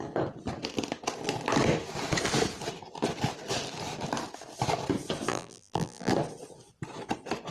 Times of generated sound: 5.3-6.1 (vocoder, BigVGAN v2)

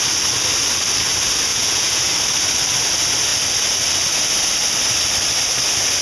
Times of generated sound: 1.5-2.1 (vocoder, Vocos)

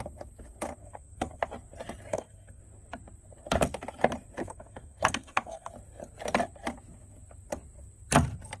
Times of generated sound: 0.8-1.4 (codec, SNAC); 2.1-2.6; 4.4-5.7

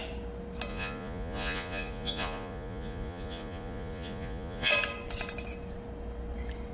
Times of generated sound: 0.7-4.7 (vocoder, Vocos)

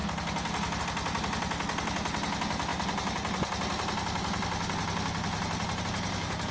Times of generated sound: none